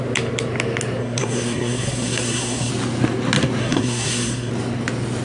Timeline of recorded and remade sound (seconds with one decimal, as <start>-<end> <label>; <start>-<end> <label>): 0.0-1.0 recorded; 1.0-2.7 remade; 2.7-3.6 recorded; 3.6-4.5 remade; 4.5-5.2 recorded